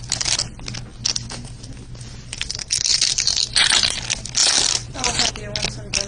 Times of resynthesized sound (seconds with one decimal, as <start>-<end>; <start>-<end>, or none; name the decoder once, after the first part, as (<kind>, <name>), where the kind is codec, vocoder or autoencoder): 2.9-4.0 (vocoder, BigVGAN v2); 4.4-5.3